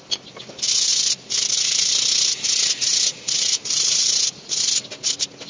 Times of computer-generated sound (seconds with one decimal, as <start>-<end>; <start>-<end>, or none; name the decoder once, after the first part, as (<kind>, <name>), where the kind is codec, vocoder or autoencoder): 3.1-4.6 (vocoder, Vocos)